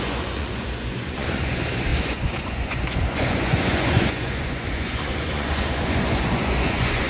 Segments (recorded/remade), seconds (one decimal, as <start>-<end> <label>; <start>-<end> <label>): 0.0-7.1 remade